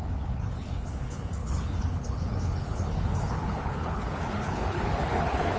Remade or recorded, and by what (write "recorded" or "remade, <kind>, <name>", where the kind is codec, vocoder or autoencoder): remade, codec, HILCodec